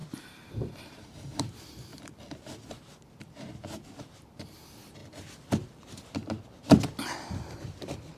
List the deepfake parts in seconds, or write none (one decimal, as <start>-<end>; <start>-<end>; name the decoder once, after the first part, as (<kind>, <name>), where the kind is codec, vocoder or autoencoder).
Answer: 0.0-1.9 (vocoder, BigVGAN v2); 2.7-5.0